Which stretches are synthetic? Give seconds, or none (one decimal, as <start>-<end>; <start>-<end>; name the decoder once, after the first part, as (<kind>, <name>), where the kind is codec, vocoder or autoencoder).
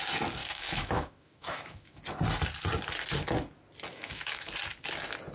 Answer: 0.4-2.0 (autoencoder, DAC-VAE); 3.9-4.5